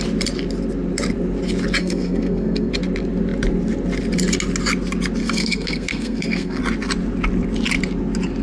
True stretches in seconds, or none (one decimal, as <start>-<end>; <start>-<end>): 0.0-1.8; 2.7-5.2; 6.6-8.4